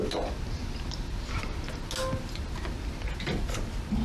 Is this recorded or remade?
recorded